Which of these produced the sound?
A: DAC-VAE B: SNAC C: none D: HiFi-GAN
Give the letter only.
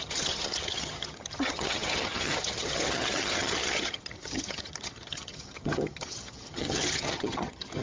D